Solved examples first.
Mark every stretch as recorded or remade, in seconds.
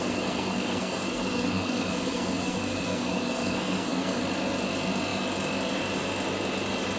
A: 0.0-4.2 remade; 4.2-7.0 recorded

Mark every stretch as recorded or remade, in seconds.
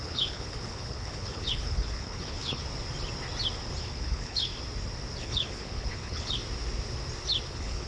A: 0.0-2.6 remade; 2.6-3.8 recorded; 3.8-4.5 remade; 4.5-5.2 recorded; 5.2-6.4 remade; 6.4-7.5 recorded; 7.5-7.9 remade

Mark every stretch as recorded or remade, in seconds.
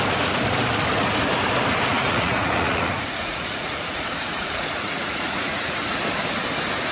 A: 0.0-1.9 recorded; 1.9-6.0 remade; 6.0-6.9 recorded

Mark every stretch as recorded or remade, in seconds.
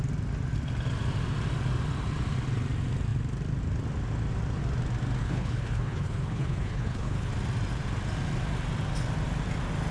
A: 0.0-5.2 recorded; 5.2-7.3 remade; 7.3-9.9 recorded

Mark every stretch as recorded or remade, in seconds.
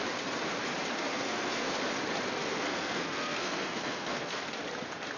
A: 0.0-1.1 recorded; 1.1-1.8 remade; 1.8-2.4 recorded; 2.4-4.5 remade; 4.5-5.2 recorded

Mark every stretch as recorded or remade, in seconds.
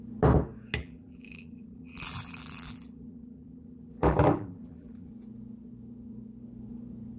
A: 0.0-0.8 recorded; 0.8-5.1 remade; 5.1-7.2 recorded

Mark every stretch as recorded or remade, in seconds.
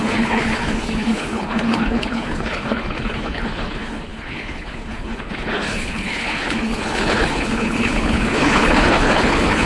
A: 0.0-9.7 remade